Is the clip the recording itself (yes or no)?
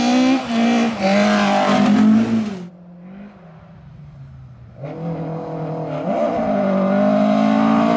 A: yes